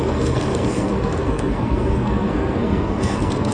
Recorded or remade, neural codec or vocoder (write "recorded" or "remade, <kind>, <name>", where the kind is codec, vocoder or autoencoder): remade, codec, SNAC